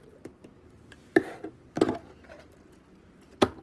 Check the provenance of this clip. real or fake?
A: real